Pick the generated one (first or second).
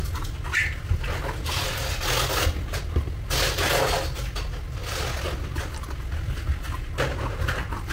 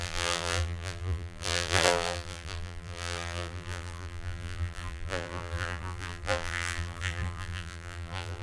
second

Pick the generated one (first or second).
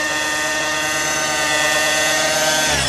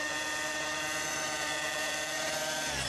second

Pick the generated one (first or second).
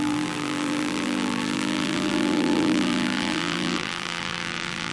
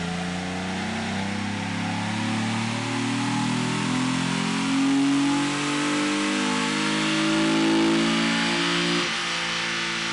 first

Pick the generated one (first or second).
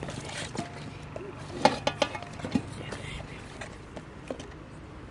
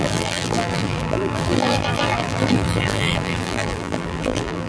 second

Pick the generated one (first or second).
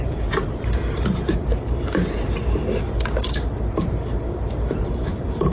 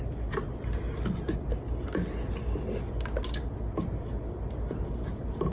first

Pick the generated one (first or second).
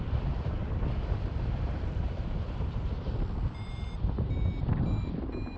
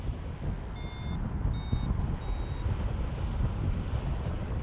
first